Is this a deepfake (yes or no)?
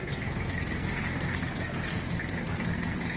yes